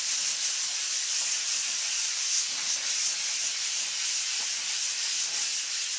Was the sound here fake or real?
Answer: real